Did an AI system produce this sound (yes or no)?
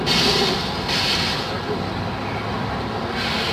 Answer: no